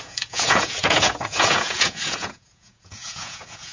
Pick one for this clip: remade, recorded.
remade